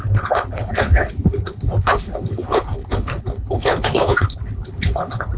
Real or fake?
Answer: fake